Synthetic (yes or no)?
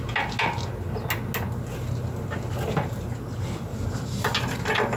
no